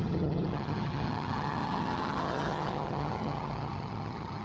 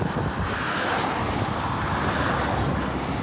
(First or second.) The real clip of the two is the second